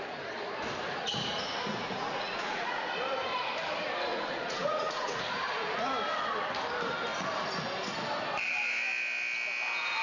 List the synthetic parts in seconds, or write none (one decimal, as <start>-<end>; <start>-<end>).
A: 1.7-2.9; 4.1-5.3